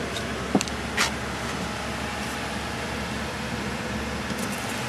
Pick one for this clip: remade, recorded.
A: recorded